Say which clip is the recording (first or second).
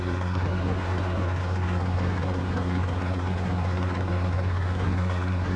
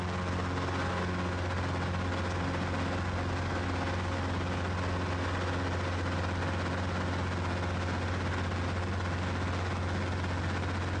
second